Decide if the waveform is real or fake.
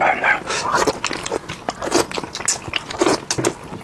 real